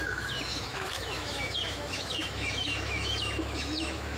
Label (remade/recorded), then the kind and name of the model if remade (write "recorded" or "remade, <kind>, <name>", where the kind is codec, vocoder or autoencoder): remade, autoencoder, DAC-VAE